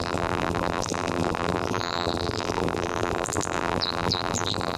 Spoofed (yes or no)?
yes